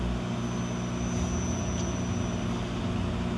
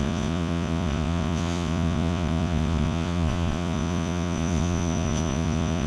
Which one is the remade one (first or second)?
second